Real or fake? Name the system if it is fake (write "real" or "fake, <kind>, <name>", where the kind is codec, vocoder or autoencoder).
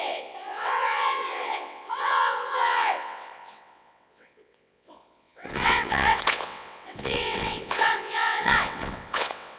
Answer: fake, vocoder, WaveNeXt